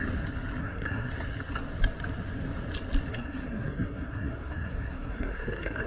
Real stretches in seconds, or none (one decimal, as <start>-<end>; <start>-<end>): 0.0-0.6; 1.1-3.1